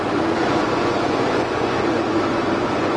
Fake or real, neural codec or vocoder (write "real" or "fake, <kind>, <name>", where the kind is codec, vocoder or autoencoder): fake, vocoder, Vocos